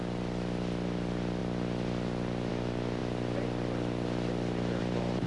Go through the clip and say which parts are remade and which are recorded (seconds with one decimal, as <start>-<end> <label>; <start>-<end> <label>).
0.0-5.3 recorded